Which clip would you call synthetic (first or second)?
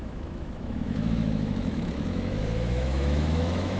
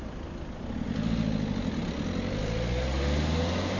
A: first